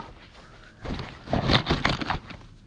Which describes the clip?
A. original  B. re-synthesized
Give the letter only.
A